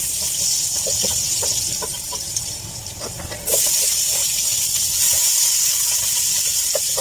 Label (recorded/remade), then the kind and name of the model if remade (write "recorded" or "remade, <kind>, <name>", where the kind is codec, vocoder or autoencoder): recorded